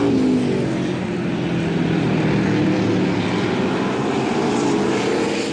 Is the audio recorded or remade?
recorded